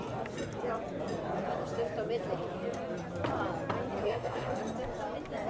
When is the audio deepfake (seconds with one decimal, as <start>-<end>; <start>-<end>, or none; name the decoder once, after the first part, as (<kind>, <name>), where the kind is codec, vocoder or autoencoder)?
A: 4.0-4.6 (codec, SNAC)